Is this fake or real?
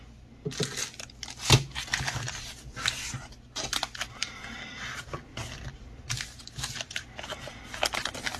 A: real